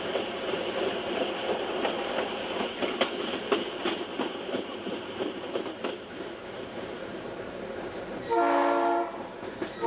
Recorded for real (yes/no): no